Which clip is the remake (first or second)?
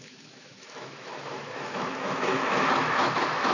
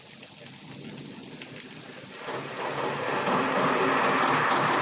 first